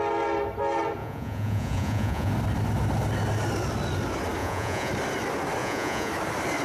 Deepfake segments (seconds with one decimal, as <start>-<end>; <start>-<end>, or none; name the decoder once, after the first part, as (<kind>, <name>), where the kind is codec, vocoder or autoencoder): 1.0-2.3 (vocoder, Vocos); 4.4-4.9; 5.6-6.1